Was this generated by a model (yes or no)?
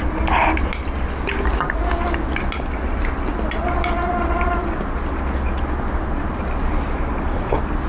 no